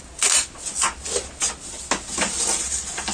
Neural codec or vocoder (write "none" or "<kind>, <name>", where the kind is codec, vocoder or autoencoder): none